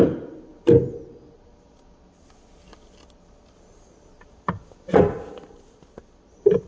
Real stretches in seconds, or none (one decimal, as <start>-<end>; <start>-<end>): 0.0-6.7